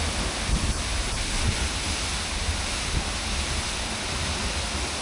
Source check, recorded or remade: recorded